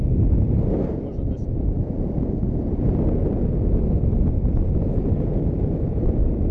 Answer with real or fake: real